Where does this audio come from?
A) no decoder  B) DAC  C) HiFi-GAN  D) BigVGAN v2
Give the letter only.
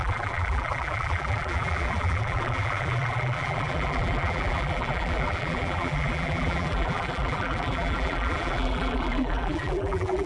D